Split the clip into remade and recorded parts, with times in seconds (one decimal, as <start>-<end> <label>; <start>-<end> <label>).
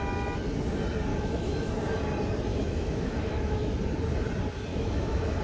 0.0-1.1 recorded; 1.1-1.7 remade; 1.7-2.5 recorded; 2.5-3.7 remade; 3.7-4.7 recorded; 4.7-5.4 remade